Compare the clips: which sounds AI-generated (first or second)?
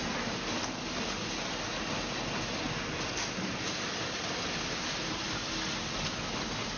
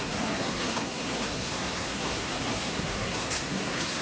second